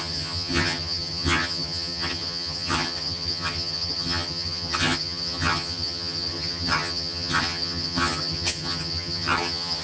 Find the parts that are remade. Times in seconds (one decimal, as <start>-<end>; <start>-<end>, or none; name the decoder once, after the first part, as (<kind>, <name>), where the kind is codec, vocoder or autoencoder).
0.0-9.8 (vocoder, HiFi-GAN)